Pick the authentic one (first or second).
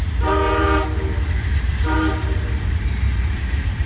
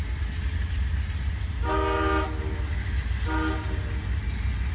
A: second